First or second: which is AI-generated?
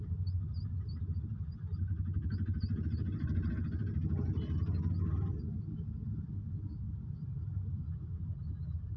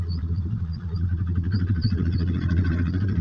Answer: second